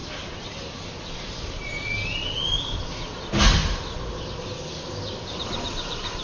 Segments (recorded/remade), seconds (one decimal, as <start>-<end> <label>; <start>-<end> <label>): 0.0-3.2 recorded; 3.2-3.6 remade; 3.6-4.9 recorded; 4.9-6.2 remade